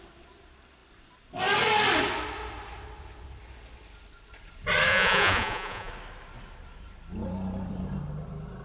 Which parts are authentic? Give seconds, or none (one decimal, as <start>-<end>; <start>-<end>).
0.0-4.9; 5.9-8.6